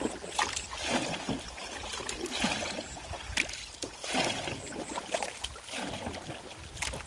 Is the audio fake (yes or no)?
no